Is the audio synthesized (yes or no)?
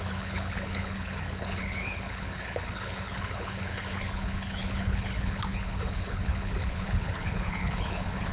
yes